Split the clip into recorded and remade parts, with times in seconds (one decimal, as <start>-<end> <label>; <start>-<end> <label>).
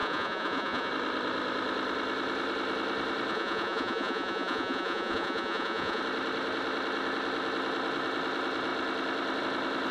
0.0-0.9 remade; 0.9-3.3 recorded; 3.3-6.0 remade; 6.0-9.9 recorded